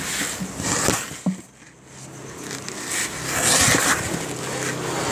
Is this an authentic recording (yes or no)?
yes